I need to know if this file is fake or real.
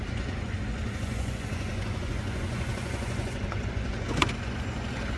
fake